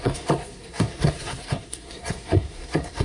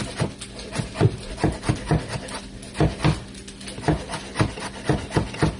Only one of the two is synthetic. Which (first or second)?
first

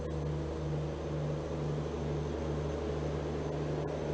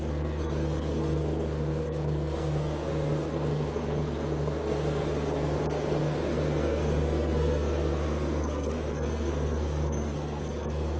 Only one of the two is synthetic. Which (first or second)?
second